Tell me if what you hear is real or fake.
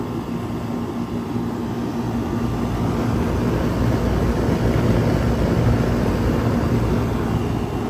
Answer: real